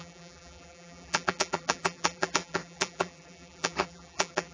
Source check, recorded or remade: remade